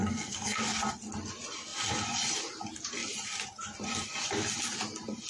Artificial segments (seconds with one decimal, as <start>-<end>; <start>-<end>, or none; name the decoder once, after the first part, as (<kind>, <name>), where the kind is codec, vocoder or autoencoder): 0.0-0.6 (codec, SNAC)